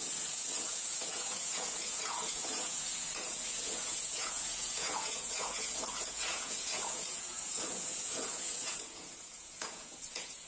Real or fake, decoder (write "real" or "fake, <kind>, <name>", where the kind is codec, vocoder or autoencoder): fake, vocoder, Vocos